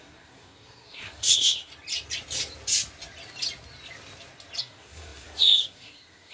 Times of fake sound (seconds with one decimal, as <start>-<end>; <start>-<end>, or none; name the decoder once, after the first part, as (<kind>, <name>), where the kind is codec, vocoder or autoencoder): 0.0-1.7 (codec, SNAC); 4.6-6.3